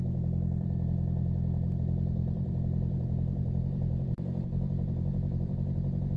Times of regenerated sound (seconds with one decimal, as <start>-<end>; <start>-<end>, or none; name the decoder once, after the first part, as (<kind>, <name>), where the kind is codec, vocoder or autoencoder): 0.0-6.2 (vocoder, BigVGAN v2)